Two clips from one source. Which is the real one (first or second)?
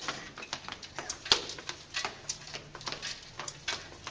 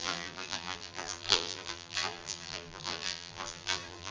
first